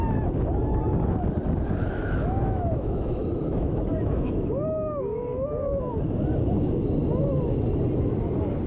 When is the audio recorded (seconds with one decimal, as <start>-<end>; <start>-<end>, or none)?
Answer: 0.0-1.9; 5.9-8.7